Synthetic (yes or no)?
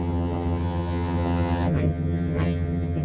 yes